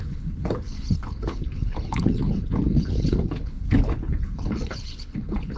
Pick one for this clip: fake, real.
fake